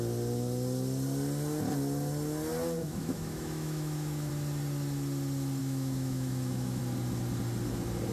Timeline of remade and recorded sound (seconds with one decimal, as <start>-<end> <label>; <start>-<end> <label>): 0.0-2.8 recorded; 2.8-4.3 remade; 4.3-5.6 recorded; 5.6-6.8 remade; 6.8-8.1 recorded